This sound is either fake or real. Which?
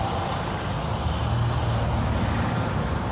real